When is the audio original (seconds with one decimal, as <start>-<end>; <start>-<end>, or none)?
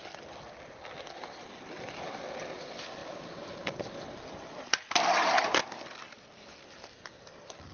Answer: 0.0-7.7